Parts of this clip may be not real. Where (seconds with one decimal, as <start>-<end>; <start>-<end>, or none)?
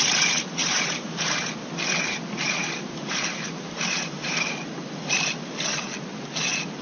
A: 0.6-1.5; 2.6-4.4